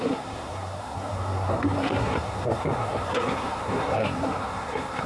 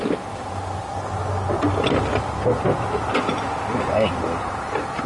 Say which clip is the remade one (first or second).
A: first